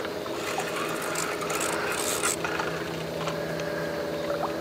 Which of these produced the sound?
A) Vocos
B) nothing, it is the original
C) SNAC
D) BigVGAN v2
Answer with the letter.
B